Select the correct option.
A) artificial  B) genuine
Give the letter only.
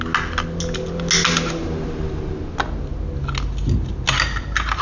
B